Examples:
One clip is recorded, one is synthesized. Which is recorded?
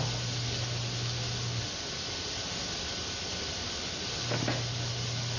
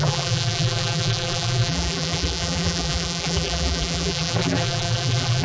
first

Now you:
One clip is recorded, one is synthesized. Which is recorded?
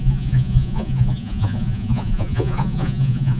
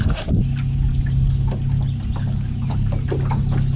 second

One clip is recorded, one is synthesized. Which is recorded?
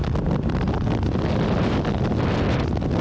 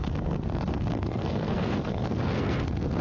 first